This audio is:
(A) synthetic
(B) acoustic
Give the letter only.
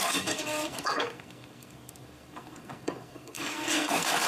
A